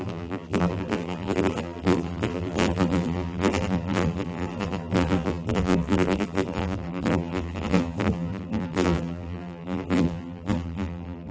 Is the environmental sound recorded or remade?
remade